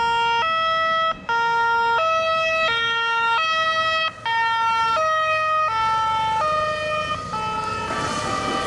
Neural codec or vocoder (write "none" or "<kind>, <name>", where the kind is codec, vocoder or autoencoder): none